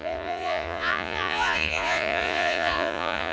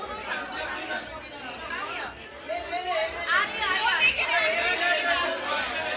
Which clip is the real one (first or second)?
second